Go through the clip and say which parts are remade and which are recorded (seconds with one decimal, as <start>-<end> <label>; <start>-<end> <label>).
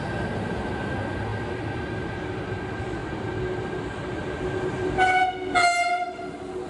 0.0-6.7 recorded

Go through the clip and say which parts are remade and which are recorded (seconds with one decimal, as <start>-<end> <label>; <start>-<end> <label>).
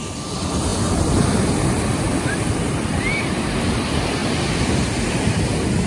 0.0-4.2 remade; 4.2-5.9 recorded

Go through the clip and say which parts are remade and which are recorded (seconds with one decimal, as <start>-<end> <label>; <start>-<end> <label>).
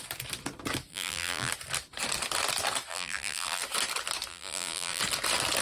0.0-0.9 recorded; 0.9-1.5 remade; 1.5-2.9 recorded; 2.9-3.6 remade; 3.6-4.3 recorded; 4.3-5.0 remade; 5.0-5.6 recorded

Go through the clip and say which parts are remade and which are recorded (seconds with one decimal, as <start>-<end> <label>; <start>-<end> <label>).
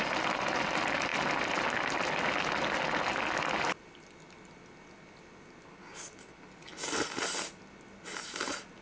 0.0-8.8 recorded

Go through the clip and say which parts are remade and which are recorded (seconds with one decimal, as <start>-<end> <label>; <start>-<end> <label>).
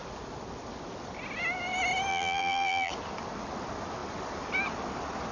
0.0-2.1 recorded; 2.1-2.9 remade; 2.9-5.3 recorded